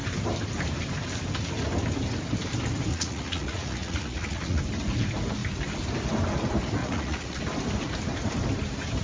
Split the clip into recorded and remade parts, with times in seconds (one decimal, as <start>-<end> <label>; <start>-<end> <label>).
0.0-2.9 recorded; 2.9-4.6 remade; 4.6-6.8 recorded; 6.8-7.4 remade; 7.4-9.0 recorded